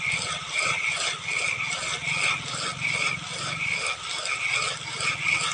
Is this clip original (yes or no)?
yes